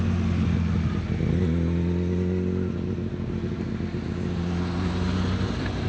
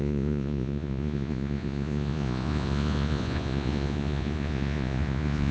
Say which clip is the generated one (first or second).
second